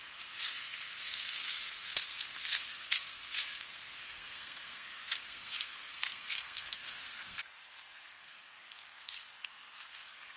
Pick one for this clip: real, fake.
fake